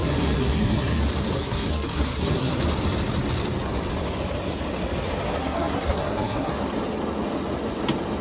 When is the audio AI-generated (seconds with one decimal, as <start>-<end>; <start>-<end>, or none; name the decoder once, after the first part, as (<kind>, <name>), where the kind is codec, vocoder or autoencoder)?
0.0-1.0 (codec, SNAC); 1.4-2.6; 5.4-6.5